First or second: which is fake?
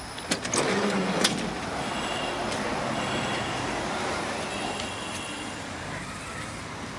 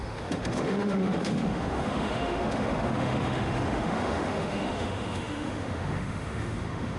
second